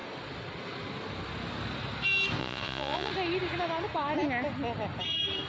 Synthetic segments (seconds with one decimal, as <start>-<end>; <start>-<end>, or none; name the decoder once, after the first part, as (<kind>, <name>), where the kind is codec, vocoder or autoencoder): 2.4-3.1 (vocoder, Vocos)